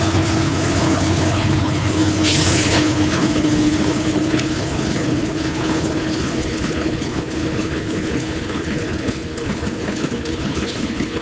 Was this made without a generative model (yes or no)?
no